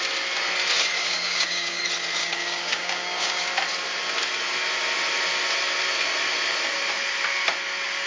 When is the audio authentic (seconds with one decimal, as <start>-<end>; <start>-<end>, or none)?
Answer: 0.0-1.0; 1.8-2.2; 3.4-8.1